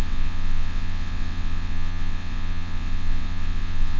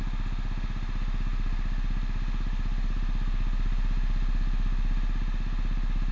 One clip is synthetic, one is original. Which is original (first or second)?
second